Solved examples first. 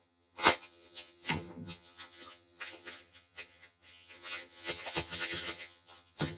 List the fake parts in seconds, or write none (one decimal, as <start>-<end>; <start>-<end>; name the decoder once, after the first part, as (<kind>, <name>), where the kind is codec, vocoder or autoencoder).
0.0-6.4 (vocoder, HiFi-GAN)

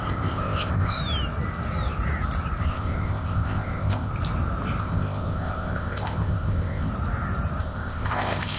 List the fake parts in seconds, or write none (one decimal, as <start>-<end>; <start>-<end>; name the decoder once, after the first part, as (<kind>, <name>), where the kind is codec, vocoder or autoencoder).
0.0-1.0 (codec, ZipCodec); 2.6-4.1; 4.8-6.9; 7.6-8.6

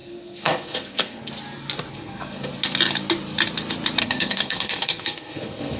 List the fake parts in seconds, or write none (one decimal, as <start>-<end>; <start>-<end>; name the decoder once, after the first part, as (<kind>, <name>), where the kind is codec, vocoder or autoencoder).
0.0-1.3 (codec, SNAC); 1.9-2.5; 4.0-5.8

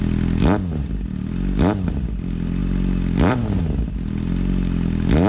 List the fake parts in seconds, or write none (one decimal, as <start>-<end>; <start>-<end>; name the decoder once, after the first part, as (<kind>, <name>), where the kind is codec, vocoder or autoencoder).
none

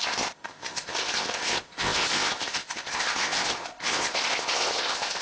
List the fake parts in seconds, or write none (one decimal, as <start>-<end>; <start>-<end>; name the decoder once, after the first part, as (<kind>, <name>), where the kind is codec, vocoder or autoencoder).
0.0-5.2 (codec, ZipCodec)